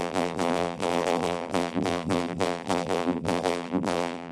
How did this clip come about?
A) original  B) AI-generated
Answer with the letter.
B